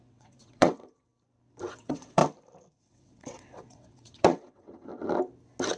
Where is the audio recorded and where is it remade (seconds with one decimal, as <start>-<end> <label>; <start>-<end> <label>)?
0.0-1.1 remade; 1.1-1.7 recorded; 1.7-2.2 remade; 2.2-2.8 recorded; 2.8-4.9 remade; 4.9-5.8 recorded